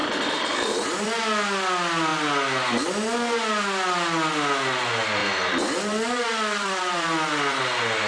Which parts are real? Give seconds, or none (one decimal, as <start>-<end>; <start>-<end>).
1.2-5.2; 7.6-8.1